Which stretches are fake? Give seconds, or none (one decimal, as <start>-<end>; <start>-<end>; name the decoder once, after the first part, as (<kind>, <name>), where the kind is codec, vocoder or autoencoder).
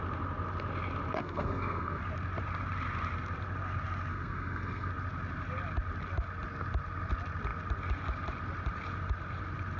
1.2-2.0 (codec, SNAC); 4.1-4.9